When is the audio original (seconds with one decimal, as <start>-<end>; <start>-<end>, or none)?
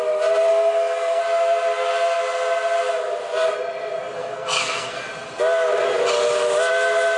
0.0-0.5; 1.2-4.2; 5.1-7.2